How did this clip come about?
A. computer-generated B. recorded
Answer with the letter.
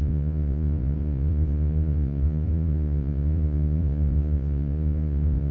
A